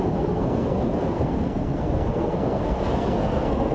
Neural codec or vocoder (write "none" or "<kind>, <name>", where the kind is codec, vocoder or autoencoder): codec, SNAC